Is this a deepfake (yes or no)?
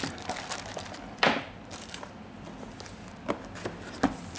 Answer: no